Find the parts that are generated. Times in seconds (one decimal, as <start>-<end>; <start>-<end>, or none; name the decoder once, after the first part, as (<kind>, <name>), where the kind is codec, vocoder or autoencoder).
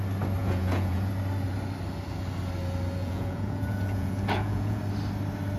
0.4-1.1 (vocoder, Vocos); 3.0-4.8